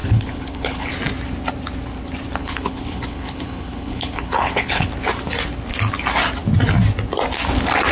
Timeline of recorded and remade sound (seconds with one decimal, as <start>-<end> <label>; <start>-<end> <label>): 0.0-0.9 remade; 0.9-2.4 recorded; 2.4-4.9 remade; 4.9-7.9 recorded